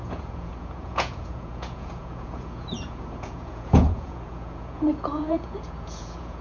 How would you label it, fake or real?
fake